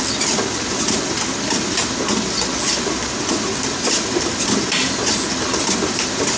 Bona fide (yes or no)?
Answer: yes